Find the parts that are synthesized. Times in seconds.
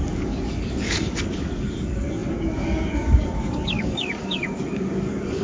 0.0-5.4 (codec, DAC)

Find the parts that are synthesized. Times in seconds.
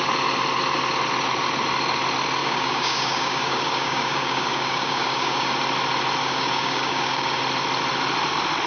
2.4-5.5 (codec, DAC); 6.2-7.4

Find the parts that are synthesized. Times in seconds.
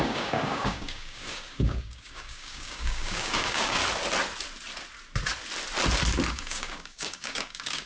0.0-3.8 (codec, DAC); 6.3-7.9